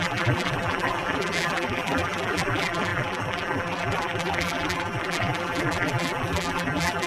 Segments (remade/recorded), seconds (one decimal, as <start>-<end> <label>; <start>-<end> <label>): 0.0-7.1 remade